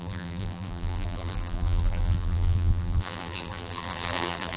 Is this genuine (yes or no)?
no